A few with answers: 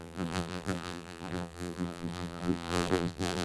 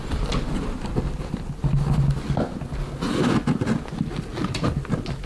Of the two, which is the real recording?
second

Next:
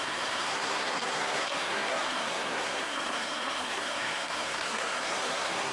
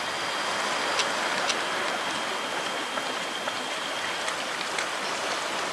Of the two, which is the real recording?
second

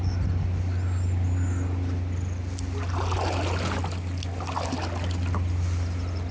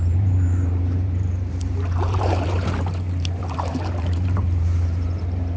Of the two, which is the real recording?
first